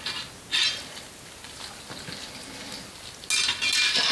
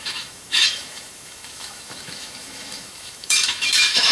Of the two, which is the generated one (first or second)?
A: second